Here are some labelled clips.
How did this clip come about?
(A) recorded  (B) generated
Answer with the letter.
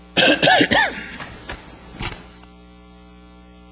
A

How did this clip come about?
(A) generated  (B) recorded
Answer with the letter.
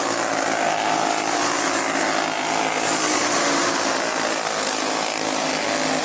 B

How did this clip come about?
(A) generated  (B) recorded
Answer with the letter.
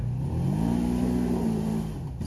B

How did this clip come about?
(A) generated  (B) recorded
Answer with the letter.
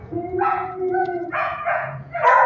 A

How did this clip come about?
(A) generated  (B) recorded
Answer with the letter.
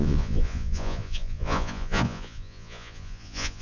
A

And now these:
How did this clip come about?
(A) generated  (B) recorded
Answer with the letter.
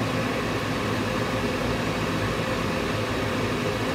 B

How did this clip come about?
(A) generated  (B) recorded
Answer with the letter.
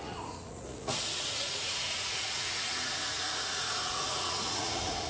A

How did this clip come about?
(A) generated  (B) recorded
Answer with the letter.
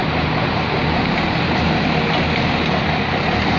B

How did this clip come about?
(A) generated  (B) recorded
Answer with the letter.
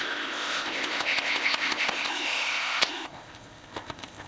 A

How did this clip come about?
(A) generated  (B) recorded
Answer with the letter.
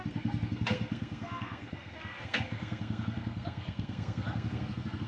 A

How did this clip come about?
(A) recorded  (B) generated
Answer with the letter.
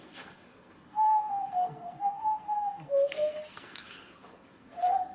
B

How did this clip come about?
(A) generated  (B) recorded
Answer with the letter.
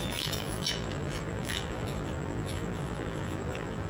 A